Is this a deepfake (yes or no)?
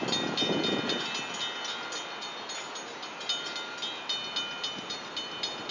no